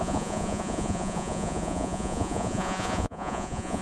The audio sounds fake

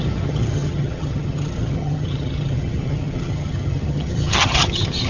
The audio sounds fake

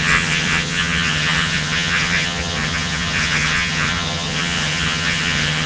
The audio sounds fake